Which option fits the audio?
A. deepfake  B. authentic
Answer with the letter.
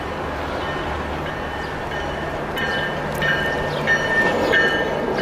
B